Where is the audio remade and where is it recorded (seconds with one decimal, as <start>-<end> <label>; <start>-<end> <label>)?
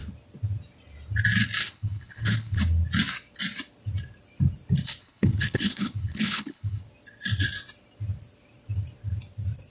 0.0-1.6 recorded; 1.6-2.6 remade; 2.6-5.0 recorded; 5.0-6.8 remade; 6.8-9.7 recorded